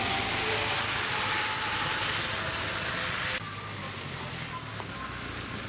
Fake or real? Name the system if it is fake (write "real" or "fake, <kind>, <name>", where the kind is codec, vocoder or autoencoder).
real